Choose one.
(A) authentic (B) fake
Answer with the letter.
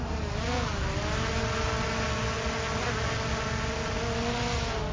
A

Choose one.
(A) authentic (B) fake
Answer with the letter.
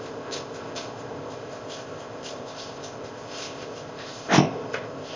B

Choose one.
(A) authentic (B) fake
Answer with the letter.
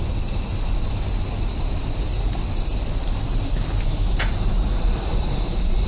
A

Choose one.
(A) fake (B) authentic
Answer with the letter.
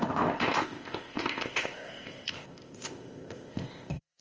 A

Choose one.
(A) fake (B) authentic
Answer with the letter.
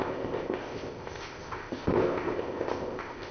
A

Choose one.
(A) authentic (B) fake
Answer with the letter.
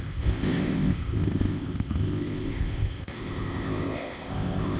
B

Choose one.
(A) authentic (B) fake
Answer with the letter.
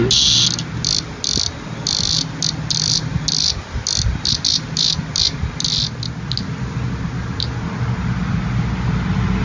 A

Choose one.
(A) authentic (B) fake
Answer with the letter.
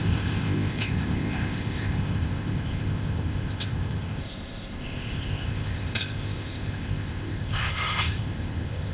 B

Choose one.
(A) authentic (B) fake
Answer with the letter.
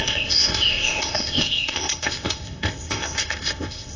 B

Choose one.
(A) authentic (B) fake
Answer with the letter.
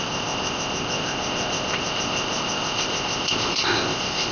B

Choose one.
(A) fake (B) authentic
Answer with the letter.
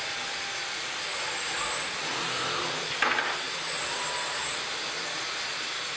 B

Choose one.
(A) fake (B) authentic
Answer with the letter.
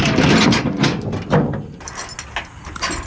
B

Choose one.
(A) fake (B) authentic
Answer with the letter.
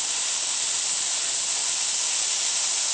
B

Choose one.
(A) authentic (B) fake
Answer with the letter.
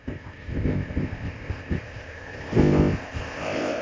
B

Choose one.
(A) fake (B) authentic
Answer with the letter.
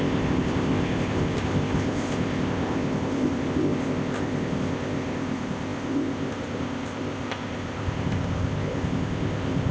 A